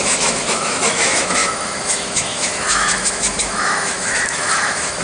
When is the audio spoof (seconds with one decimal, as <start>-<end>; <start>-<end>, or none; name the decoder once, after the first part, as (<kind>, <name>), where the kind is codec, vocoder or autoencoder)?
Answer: 0.0-5.0 (autoencoder, DAC-VAE)